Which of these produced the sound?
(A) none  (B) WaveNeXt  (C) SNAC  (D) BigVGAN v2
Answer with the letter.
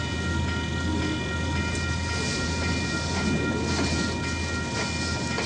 A